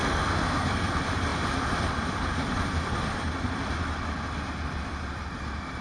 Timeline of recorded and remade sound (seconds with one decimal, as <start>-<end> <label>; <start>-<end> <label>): 0.0-0.9 remade; 0.9-5.8 recorded